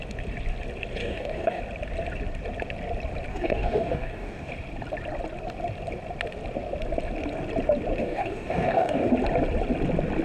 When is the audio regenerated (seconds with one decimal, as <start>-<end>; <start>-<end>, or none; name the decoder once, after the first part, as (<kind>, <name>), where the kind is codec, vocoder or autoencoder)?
1.0-1.6 (codec, DAC); 3.3-4.5; 8.0-9.1